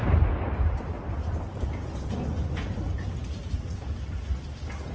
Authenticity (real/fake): real